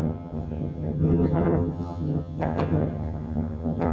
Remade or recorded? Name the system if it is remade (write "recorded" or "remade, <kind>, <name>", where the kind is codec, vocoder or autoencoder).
remade, vocoder, HiFi-GAN